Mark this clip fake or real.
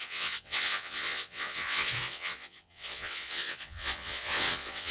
fake